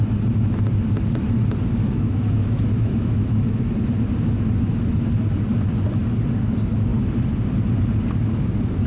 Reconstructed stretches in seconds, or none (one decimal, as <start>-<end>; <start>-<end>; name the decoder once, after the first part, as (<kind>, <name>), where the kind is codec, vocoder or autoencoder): 1.8-3.6 (autoencoder, DAC-VAE)